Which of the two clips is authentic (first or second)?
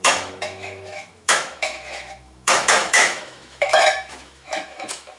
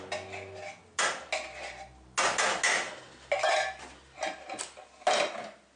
second